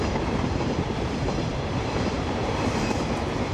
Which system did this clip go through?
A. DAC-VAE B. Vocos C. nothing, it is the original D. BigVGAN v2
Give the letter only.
D